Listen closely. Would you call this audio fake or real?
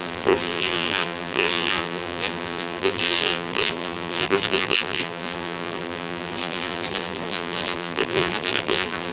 fake